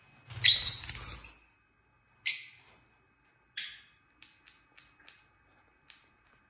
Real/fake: real